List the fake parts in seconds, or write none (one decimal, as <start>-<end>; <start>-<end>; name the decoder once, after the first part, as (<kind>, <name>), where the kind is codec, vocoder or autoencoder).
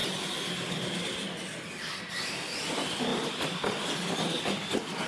none